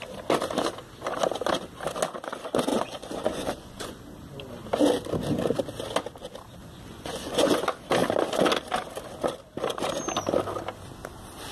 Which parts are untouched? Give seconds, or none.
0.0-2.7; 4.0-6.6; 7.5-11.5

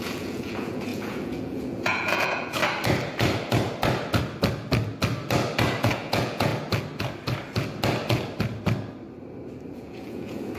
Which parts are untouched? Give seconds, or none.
2.6-5.8; 6.5-9.7

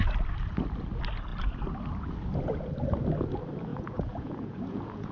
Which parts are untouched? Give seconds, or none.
0.0-3.7

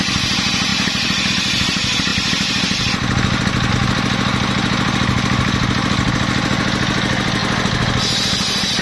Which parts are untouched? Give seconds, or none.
0.0-8.8

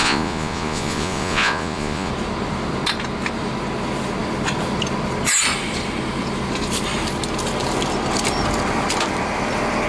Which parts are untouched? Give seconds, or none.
2.1-9.9

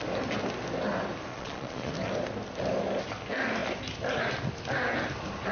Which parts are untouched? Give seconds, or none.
0.0-1.3; 1.9-5.5

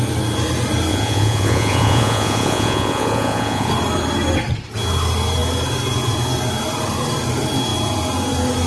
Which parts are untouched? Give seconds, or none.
0.0-0.9; 3.7-8.7

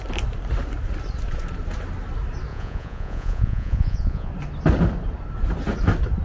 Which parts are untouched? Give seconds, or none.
0.0-2.5; 4.3-6.2